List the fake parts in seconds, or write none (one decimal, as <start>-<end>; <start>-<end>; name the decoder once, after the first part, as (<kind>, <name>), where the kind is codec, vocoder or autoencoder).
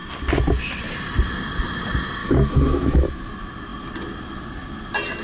2.2-3.2 (autoencoder, DAC-VAE)